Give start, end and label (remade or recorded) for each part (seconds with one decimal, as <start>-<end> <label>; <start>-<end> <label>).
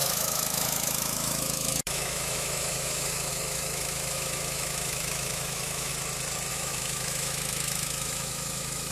0.0-5.9 remade; 5.9-6.5 recorded; 6.5-8.9 remade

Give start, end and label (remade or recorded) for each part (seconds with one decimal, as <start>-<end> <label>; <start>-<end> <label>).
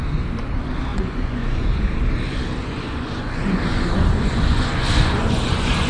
0.0-0.9 recorded; 0.9-1.8 remade; 1.8-2.6 recorded; 2.6-5.9 remade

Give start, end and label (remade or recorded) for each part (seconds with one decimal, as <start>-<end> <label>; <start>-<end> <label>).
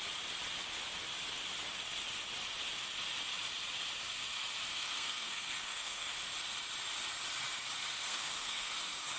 0.0-4.7 recorded; 4.7-6.2 remade; 6.2-8.1 recorded; 8.1-8.7 remade; 8.7-9.2 recorded